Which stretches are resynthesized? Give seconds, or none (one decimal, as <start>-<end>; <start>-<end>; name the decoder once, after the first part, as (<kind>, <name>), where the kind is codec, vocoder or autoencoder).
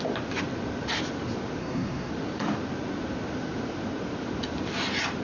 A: 1.6-2.1 (codec, SNAC)